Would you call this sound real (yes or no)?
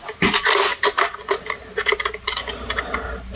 yes